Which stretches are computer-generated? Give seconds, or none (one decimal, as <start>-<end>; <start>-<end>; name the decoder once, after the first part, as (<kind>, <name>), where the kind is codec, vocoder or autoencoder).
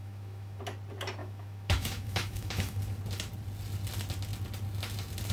0.0-0.6 (autoencoder, DAC-VAE); 1.2-2.8